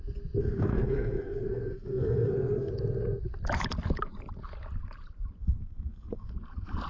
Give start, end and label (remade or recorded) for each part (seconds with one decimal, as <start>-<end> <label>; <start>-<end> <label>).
0.0-0.4 recorded; 0.4-2.7 remade; 2.7-5.4 recorded; 5.4-6.3 remade; 6.3-6.9 recorded